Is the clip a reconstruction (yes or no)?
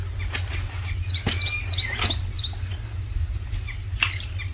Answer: no